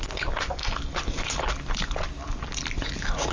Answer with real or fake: real